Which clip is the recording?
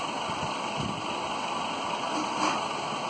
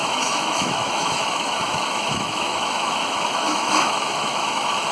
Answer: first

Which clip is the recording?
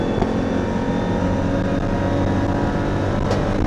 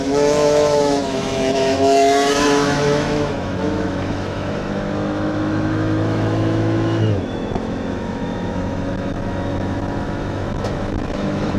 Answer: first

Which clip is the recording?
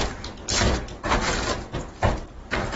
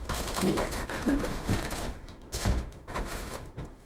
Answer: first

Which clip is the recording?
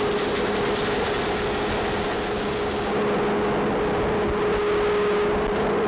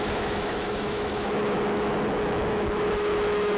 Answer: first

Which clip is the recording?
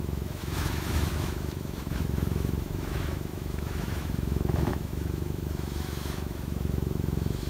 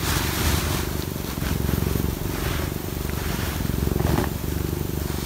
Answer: second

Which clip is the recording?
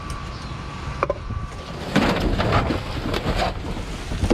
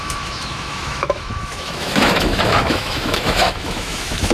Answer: first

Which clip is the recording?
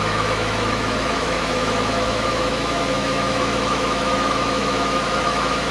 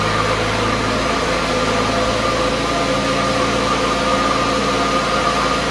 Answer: second